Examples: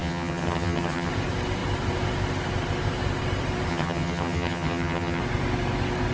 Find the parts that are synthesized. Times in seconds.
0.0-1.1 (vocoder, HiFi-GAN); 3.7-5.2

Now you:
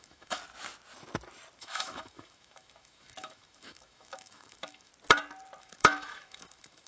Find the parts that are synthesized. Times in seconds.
0.0-0.4 (autoencoder, DAC-VAE); 1.6-4.9; 5.6-6.9

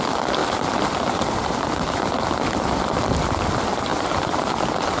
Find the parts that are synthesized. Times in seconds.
3.9-4.5 (vocoder, BigVGAN v2)